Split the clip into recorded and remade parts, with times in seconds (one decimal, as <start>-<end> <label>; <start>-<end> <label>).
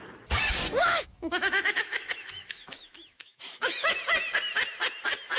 0.0-0.8 recorded; 0.8-4.0 remade; 4.0-5.4 recorded